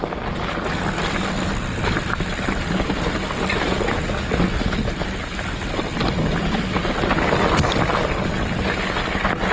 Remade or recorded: recorded